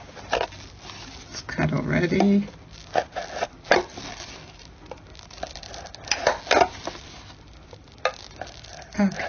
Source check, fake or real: real